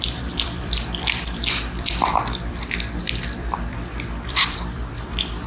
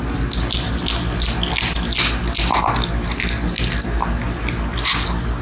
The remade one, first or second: first